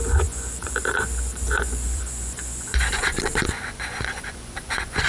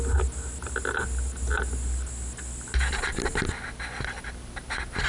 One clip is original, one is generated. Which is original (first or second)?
second